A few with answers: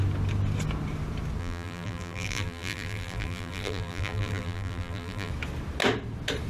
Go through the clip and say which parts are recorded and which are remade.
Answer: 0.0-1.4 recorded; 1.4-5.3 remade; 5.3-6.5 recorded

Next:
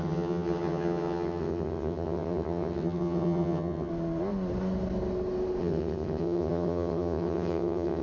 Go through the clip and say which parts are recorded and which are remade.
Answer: 0.0-3.9 remade; 3.9-5.6 recorded; 5.6-8.0 remade

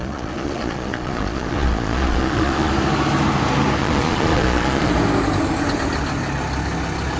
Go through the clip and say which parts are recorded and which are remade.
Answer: 0.0-2.7 remade; 2.7-3.8 recorded; 3.8-4.9 remade; 4.9-7.2 recorded